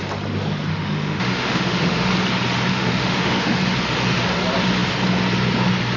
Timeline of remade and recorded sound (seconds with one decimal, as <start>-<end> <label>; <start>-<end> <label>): 0.0-0.7 recorded; 0.7-2.1 remade; 2.1-2.7 recorded; 2.7-3.6 remade; 3.6-6.0 recorded